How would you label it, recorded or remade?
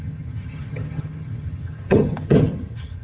remade